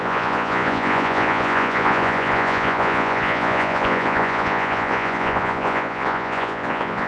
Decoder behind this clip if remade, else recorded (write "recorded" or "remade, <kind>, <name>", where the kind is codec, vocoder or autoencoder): remade, vocoder, Vocos